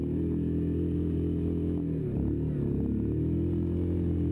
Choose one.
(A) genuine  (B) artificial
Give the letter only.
A